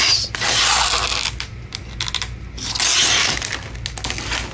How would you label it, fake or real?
real